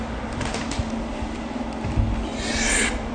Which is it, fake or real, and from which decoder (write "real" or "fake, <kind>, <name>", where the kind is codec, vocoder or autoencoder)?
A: real